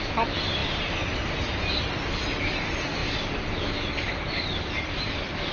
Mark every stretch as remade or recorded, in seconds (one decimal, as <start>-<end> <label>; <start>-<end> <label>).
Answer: 0.0-5.5 recorded